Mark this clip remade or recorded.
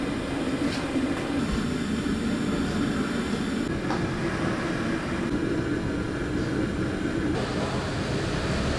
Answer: recorded